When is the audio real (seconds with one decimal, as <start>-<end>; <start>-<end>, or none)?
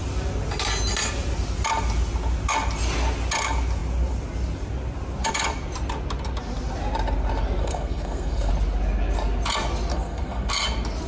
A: 0.0-7.6; 8.5-9.9; 10.5-11.1